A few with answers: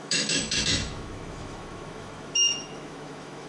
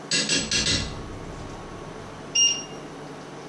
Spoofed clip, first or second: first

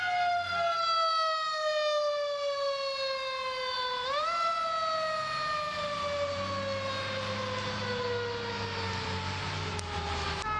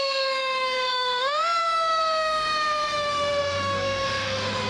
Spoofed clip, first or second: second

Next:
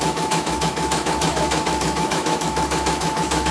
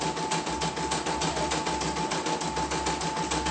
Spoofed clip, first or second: first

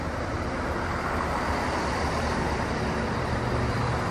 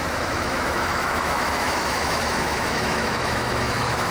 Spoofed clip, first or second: second